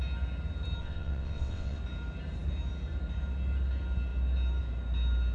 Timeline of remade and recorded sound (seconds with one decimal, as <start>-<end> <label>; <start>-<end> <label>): 0.0-0.8 recorded; 0.8-1.8 remade; 1.8-5.3 recorded